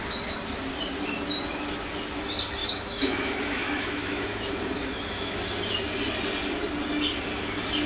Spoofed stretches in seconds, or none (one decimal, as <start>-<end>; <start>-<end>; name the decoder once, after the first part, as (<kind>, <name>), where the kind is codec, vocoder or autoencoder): 2.6-5.3 (autoencoder, DAC-VAE)